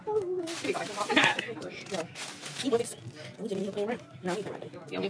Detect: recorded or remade recorded